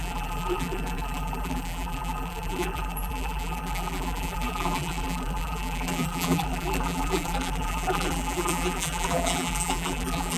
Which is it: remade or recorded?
remade